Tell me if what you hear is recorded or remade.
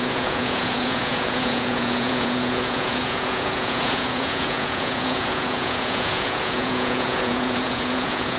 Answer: remade